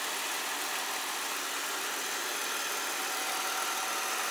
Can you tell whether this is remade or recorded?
recorded